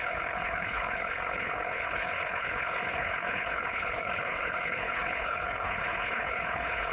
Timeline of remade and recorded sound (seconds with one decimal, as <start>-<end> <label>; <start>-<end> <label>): 0.0-6.9 remade